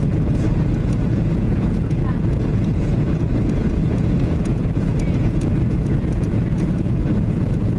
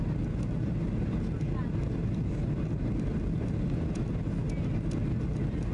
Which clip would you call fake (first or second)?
first